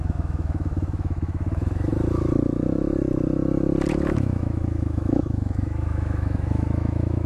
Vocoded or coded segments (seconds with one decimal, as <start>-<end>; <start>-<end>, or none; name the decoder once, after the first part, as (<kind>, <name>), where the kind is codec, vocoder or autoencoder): 0.0-1.9 (autoencoder, DAC-VAE); 3.9-7.3

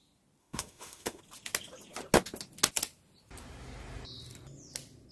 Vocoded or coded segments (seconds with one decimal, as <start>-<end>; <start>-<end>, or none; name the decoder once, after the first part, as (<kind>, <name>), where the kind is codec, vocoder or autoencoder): 0.4-1.2 (autoencoder, DAC-VAE)